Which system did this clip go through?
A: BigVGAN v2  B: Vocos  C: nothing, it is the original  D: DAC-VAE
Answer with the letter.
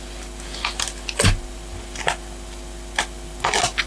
C